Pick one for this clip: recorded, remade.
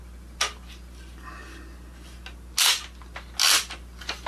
recorded